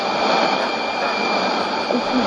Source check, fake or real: fake